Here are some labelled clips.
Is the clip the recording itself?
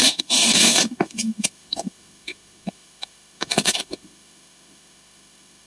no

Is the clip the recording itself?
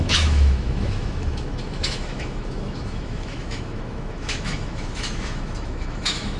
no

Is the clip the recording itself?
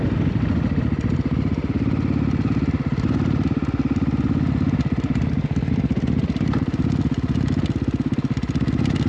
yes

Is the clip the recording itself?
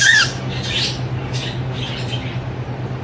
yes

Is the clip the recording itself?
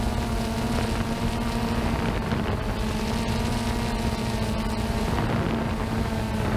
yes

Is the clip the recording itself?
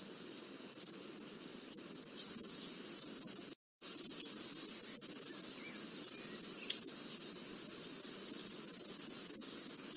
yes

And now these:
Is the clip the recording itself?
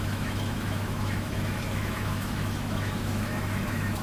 no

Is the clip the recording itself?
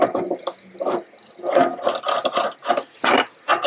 yes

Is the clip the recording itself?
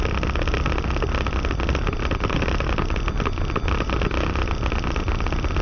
yes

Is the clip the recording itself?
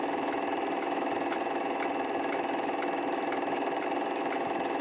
no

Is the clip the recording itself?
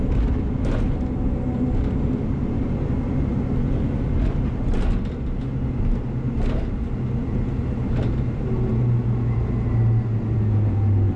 yes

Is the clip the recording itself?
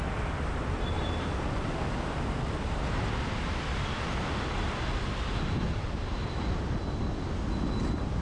yes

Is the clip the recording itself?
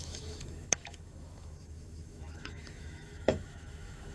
no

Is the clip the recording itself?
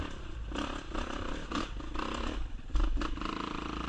yes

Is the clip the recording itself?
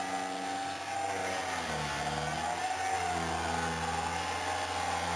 yes